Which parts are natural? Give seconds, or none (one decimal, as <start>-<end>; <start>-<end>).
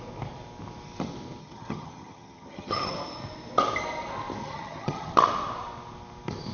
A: 0.0-1.4; 2.9-4.4; 5.1-6.5